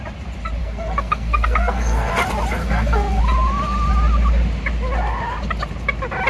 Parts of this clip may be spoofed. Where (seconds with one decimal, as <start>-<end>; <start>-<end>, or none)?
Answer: 0.6-2.1; 2.6-3.2